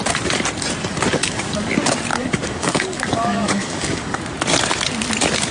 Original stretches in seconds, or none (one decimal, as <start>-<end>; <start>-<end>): 0.0-1.2; 1.7-2.1; 4.2-5.5